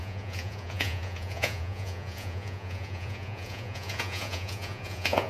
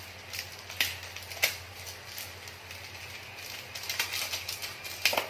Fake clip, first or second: first